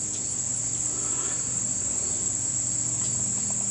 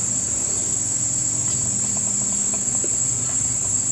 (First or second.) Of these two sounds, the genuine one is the first